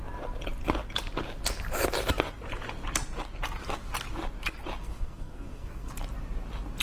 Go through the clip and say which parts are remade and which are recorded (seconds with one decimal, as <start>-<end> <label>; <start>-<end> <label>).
0.0-4.8 recorded; 4.8-5.9 remade; 5.9-6.8 recorded